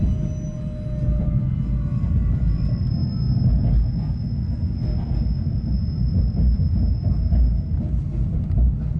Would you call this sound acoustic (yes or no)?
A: yes